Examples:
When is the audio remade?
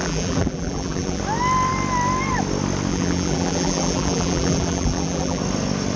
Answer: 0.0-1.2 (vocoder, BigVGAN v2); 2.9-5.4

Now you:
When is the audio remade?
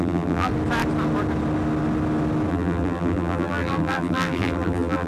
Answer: 0.0-0.5 (vocoder, BigVGAN v2); 2.5-5.1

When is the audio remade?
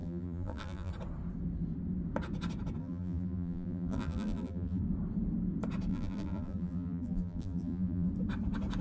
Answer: 0.0-0.9 (vocoder, BigVGAN v2); 2.8-4.8; 5.9-8.1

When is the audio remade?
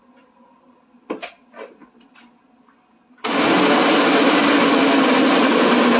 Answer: 0.0-1.8 (vocoder, BigVGAN v2); 5.4-6.0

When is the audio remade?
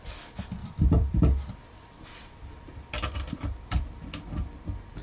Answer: 0.6-2.8 (vocoder, BigVGAN v2)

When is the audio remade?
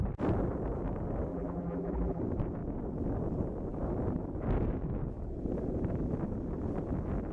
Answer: 1.3-2.2 (vocoder, BigVGAN v2)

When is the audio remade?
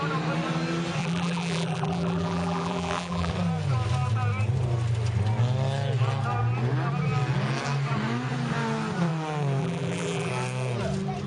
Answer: 1.0-3.3 (vocoder, BigVGAN v2); 9.6-10.3